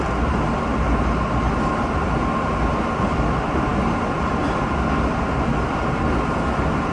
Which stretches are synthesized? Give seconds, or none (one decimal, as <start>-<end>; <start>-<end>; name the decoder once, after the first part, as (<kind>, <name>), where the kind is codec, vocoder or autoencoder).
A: 0.7-2.7 (vocoder, BigVGAN v2)